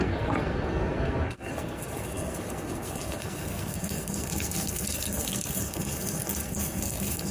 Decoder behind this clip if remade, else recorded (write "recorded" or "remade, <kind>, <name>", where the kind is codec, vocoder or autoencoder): remade, codec, SNAC